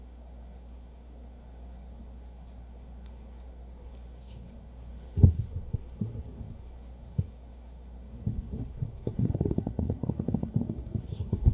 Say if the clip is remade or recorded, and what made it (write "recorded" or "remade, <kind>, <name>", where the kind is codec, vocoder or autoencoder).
remade, codec, SNAC